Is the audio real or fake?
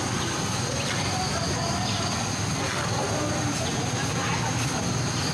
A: real